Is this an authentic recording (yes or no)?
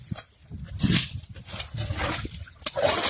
yes